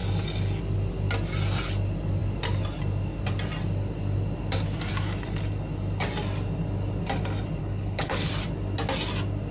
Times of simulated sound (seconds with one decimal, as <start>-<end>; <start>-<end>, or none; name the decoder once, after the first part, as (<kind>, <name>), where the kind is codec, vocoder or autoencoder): 7.6-8.3 (codec, HILCodec)